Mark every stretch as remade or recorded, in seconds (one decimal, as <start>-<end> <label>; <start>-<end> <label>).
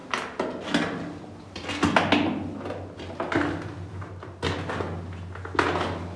0.0-6.2 recorded